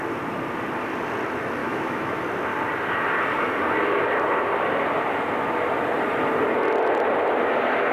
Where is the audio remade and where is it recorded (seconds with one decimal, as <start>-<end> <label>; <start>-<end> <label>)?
0.0-1.6 recorded; 1.6-2.2 remade; 2.2-7.9 recorded